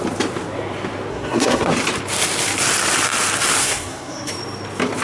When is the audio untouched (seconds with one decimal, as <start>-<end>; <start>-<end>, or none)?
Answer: 0.0-1.1; 1.7-3.6; 4.3-5.0